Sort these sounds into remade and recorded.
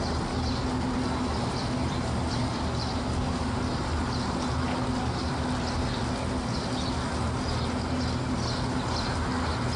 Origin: recorded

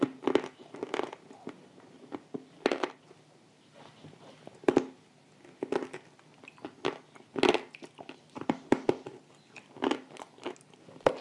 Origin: recorded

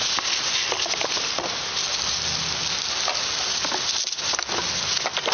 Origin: recorded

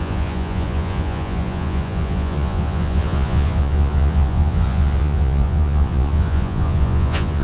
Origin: remade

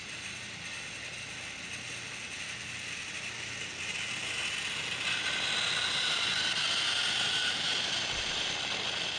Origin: recorded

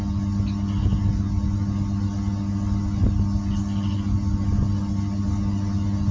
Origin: recorded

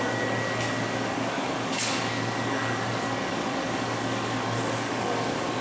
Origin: remade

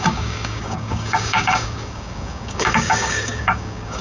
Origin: remade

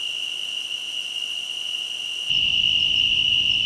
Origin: recorded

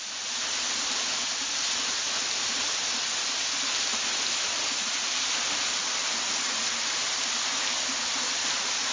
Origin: recorded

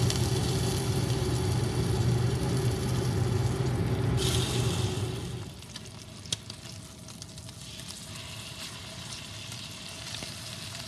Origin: recorded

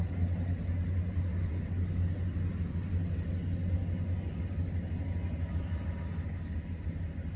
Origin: recorded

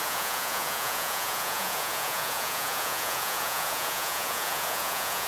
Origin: remade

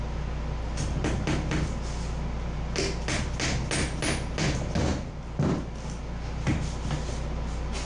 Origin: recorded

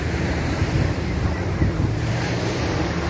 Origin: remade